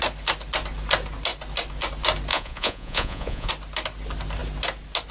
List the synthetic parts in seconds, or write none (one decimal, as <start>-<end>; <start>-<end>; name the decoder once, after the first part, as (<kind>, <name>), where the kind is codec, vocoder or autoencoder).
2.3-3.5 (vocoder, Vocos)